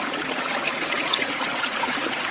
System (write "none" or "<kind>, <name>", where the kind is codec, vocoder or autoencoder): vocoder, Vocos